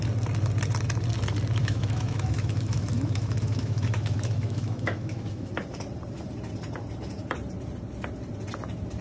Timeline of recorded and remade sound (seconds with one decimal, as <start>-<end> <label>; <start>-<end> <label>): 0.0-1.6 recorded; 1.6-5.5 remade; 5.5-9.0 recorded